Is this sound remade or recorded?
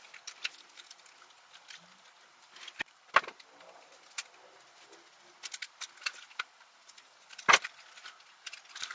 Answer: recorded